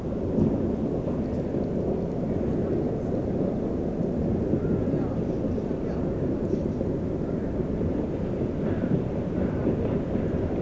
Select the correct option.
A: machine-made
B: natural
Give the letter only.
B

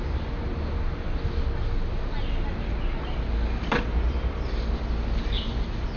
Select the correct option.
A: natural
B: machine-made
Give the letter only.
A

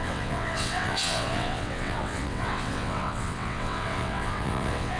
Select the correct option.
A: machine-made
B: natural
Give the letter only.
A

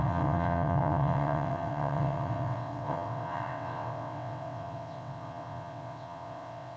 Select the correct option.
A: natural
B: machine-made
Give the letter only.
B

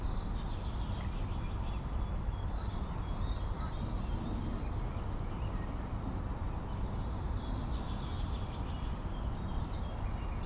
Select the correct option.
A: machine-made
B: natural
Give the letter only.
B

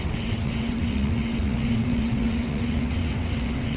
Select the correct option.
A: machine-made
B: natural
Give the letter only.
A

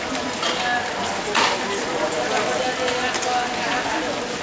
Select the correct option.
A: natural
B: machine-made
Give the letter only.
A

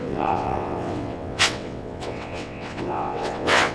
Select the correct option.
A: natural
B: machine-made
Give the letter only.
B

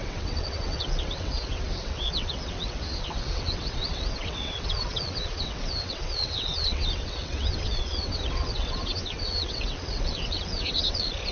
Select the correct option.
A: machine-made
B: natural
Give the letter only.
A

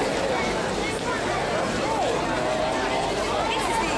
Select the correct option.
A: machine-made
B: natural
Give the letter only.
B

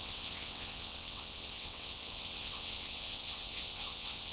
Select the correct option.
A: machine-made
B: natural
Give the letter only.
A